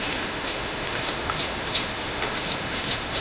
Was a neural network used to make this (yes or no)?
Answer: yes